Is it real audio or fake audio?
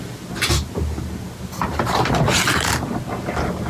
real